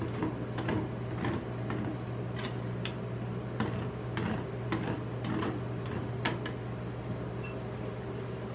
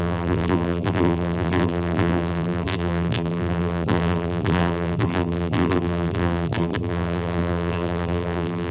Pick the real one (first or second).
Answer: first